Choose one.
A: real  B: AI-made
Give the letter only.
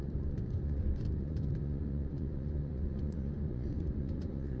B